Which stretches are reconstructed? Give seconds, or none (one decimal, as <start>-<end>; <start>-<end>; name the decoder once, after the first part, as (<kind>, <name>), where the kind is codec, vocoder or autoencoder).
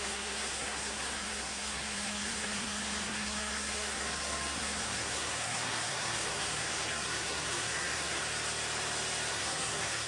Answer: 0.0-8.2 (codec, SNAC); 9.3-10.1